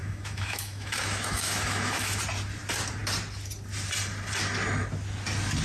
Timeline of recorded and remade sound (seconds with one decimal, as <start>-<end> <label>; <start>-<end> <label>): 0.0-2.2 remade; 2.2-5.6 recorded